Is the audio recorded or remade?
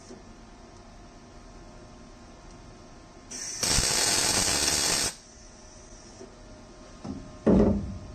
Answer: recorded